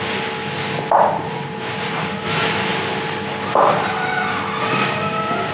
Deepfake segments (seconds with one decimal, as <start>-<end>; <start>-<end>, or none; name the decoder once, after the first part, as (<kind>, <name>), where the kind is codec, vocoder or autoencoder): none